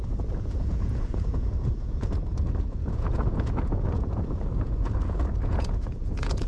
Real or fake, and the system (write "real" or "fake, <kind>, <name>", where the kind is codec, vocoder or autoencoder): fake, vocoder, Vocos